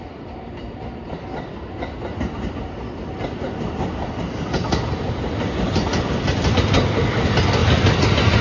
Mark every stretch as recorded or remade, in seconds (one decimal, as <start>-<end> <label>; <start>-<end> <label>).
0.0-8.4 recorded